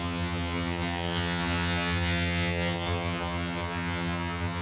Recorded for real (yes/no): no